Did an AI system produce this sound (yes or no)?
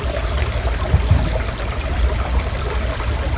no